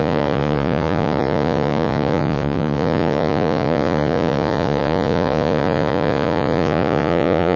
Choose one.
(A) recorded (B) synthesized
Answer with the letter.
B